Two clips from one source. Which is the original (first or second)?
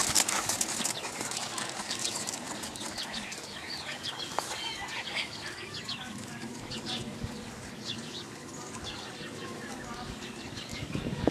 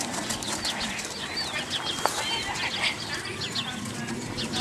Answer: second